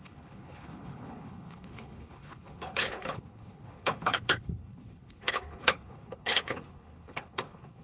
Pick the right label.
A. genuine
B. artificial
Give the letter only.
B